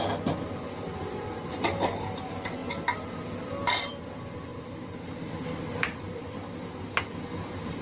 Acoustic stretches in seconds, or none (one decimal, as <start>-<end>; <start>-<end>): 0.0-7.8